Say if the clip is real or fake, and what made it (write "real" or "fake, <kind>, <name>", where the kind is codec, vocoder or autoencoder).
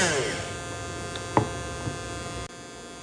real